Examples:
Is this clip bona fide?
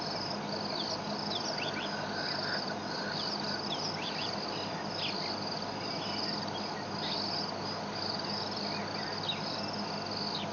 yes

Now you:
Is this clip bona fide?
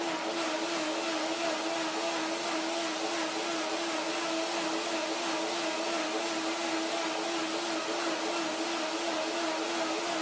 yes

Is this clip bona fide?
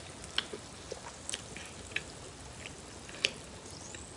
yes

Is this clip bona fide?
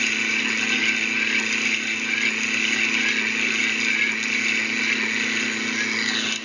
yes